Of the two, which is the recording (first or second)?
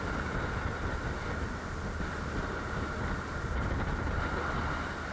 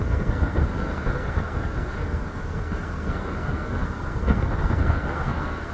first